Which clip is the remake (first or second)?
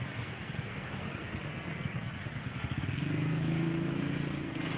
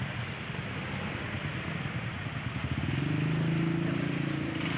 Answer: first